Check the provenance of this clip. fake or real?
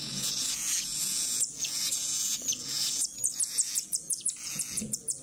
fake